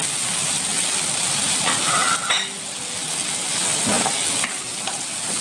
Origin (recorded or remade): recorded